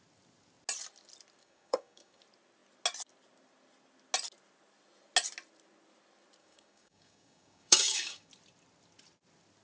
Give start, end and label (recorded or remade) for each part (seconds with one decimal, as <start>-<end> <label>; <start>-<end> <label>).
0.0-1.4 recorded; 1.4-2.2 remade; 2.2-6.4 recorded; 6.4-8.3 remade; 8.3-9.6 recorded